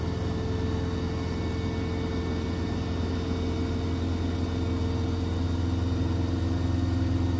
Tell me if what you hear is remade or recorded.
recorded